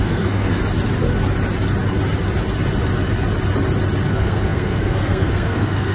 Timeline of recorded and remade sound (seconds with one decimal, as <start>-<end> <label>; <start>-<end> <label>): 0.0-0.6 remade; 0.6-4.1 recorded; 4.1-5.9 remade